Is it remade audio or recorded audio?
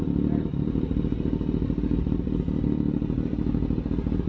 recorded